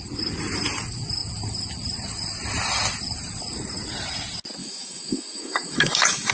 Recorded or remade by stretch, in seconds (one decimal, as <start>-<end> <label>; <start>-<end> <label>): 0.0-4.6 recorded; 4.6-6.3 remade